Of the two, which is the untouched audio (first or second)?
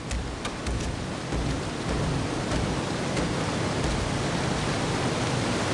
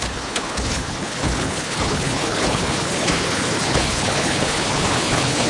first